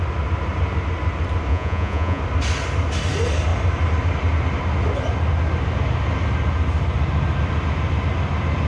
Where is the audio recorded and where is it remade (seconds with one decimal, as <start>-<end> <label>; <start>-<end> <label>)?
0.0-1.5 recorded; 1.5-2.2 remade; 2.2-8.7 recorded